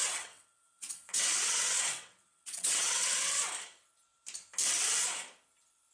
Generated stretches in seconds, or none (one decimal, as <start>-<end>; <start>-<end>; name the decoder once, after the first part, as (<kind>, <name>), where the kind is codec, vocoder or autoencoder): 0.0-3.5 (vocoder, WaveNeXt)

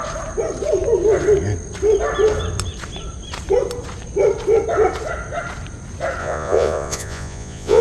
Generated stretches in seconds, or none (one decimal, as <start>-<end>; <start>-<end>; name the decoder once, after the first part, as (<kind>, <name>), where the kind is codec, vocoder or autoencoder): 6.2-7.8 (vocoder, Vocos)